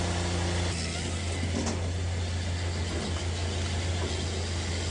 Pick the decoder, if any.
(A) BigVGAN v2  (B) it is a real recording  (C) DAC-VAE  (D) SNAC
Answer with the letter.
B